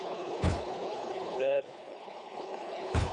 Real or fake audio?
fake